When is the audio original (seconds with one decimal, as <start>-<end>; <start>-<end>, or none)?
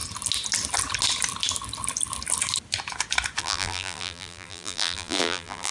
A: 0.0-3.4